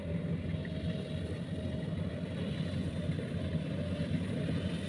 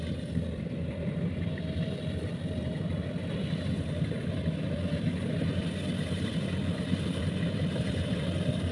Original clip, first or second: first